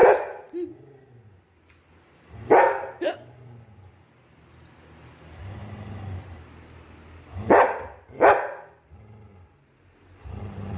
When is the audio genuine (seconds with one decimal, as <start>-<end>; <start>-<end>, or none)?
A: 0.0-10.8